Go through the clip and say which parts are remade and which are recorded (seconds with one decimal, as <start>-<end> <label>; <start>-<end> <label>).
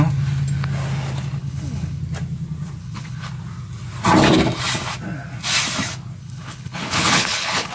0.0-1.4 recorded; 1.4-2.0 remade; 2.0-2.8 recorded; 2.8-3.3 remade; 3.3-6.2 recorded; 6.2-7.7 remade